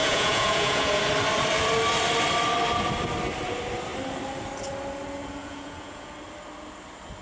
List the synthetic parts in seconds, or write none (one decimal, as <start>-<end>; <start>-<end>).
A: 0.0-1.0; 5.4-6.1

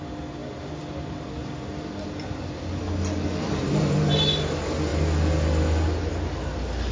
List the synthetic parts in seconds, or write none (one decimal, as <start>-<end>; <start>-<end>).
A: none

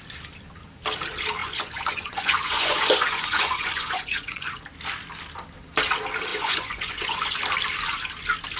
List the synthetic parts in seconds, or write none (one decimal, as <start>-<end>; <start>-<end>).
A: 1.4-4.5; 6.3-7.4

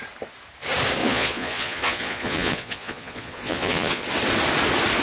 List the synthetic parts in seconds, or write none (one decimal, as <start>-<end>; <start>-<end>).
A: 1.0-4.0

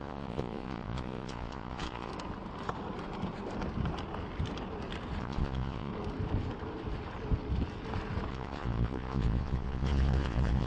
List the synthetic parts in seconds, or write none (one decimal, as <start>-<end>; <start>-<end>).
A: 0.0-2.1; 5.2-5.9; 8.3-10.7